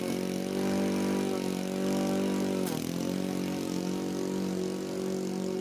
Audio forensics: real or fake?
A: real